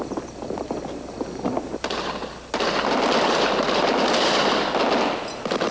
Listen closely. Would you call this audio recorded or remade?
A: recorded